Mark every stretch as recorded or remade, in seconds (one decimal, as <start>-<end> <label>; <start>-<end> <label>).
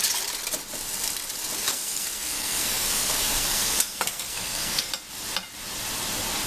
0.0-1.7 recorded; 1.7-4.9 remade; 4.9-6.5 recorded